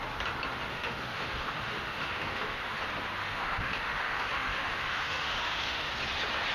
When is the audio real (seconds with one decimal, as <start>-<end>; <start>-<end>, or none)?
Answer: 0.0-0.7; 2.8-3.2; 5.9-6.5